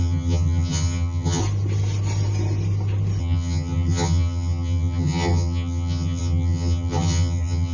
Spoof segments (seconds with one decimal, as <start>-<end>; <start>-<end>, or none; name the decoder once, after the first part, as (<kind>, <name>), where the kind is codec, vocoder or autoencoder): 0.0-1.4 (vocoder, HiFi-GAN); 3.2-7.7